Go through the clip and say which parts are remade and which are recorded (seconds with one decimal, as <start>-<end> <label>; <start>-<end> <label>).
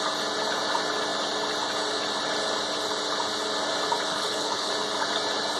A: 0.0-4.1 recorded; 4.1-4.7 remade; 4.7-5.6 recorded